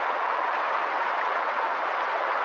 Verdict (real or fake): fake